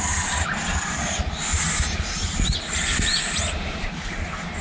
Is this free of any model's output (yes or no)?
yes